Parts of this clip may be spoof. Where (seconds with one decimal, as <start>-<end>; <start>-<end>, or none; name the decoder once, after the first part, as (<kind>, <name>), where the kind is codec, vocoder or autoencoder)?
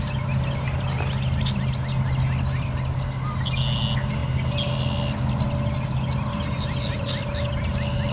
none